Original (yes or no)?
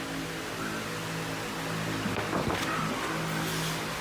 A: yes